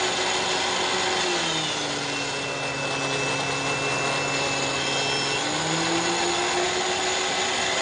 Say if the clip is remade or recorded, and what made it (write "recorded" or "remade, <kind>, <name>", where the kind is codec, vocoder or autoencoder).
recorded